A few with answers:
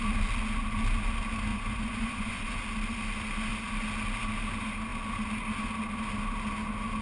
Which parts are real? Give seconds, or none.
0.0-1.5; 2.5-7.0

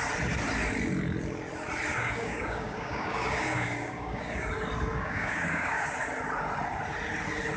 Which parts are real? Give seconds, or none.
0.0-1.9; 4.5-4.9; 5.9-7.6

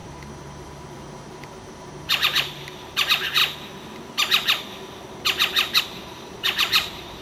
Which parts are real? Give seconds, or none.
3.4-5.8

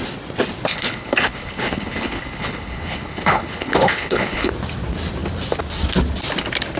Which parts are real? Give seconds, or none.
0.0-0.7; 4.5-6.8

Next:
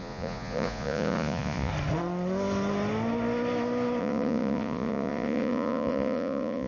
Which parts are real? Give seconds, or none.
1.7-4.0

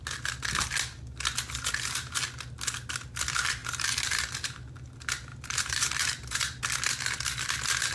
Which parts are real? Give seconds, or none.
0.0-3.6; 4.2-5.3; 6.6-7.9